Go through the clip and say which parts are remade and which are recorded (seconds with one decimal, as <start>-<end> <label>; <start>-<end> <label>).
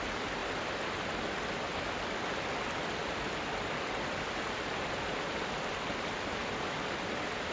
0.0-7.5 recorded